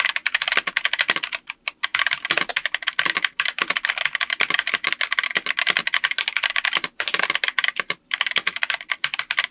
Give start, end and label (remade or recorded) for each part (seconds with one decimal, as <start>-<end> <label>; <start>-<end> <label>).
0.0-9.5 recorded